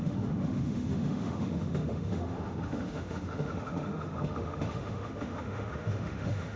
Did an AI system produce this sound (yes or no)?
yes